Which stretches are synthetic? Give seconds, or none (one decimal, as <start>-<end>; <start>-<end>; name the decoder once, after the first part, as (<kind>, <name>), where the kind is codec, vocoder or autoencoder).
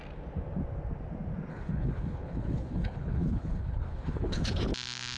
1.5-4.6 (codec, HILCodec)